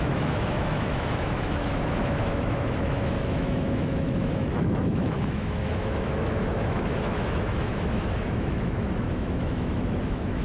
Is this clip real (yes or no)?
no